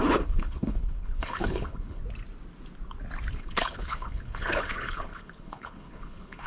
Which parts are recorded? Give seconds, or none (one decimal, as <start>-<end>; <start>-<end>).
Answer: 2.0-3.3